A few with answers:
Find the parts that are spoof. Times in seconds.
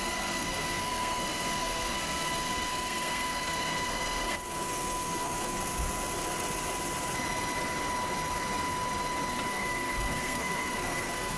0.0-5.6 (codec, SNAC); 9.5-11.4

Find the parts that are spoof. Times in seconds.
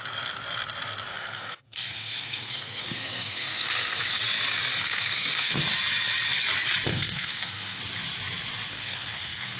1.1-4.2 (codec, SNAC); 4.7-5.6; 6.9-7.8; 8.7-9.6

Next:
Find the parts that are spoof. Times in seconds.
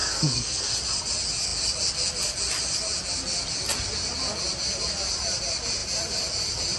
0.0-0.6 (codec, SNAC)